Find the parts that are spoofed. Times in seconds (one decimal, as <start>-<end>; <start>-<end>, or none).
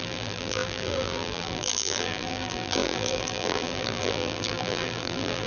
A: 0.0-5.5